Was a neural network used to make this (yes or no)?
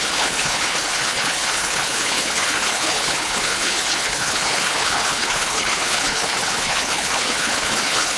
yes